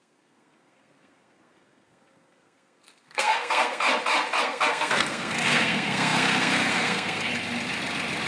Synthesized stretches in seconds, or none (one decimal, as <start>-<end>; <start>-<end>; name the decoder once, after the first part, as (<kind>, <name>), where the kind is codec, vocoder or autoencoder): 0.0-3.9 (codec, SNAC); 4.4-7.3